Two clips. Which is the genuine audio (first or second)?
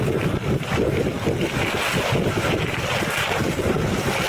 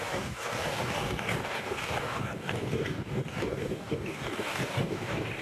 first